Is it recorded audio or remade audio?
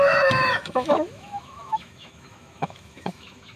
remade